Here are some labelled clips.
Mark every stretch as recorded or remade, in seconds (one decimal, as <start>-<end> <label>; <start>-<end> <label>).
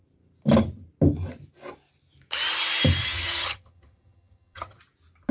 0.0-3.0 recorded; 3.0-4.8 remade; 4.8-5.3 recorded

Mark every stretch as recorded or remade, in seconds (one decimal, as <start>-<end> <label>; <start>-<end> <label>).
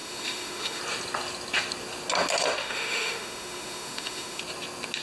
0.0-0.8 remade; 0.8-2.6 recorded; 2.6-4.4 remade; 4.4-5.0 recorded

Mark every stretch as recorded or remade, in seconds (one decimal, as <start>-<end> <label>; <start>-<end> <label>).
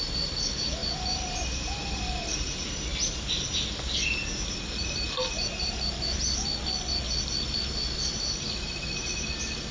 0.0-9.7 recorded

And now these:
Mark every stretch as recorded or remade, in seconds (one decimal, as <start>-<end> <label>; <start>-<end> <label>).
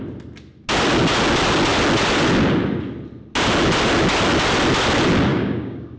0.0-5.3 recorded; 5.3-6.0 remade